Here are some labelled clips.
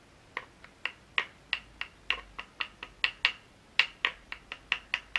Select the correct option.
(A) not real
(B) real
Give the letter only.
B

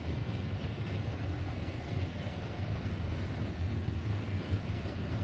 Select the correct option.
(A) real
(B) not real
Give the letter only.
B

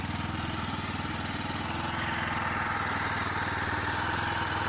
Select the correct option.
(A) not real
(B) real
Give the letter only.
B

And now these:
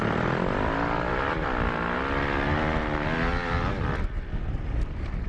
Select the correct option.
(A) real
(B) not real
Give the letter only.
A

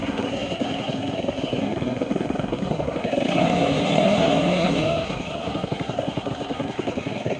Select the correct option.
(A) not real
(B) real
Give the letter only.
A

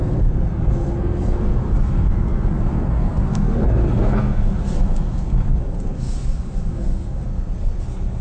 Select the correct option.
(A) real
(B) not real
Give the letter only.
B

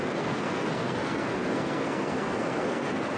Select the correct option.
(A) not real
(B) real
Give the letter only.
A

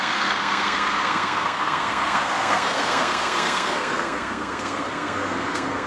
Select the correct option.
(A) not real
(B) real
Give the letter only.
A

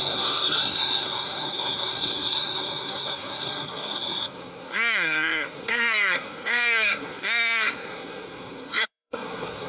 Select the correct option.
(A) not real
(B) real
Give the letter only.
A